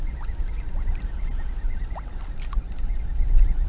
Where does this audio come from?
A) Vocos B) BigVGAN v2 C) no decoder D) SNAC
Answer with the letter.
C